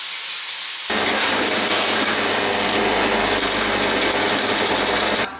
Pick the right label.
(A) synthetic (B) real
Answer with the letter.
B